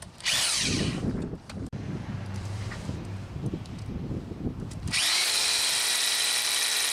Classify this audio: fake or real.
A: fake